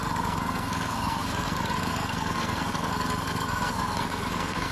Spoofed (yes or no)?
yes